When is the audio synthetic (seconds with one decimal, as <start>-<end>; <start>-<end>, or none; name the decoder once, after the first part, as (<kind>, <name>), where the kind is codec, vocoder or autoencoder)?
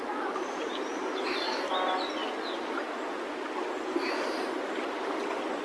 none